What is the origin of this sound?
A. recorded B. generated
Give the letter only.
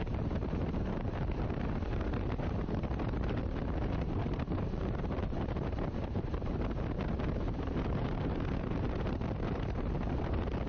B